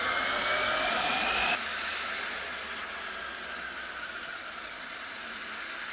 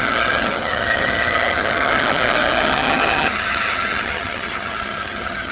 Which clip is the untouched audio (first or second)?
first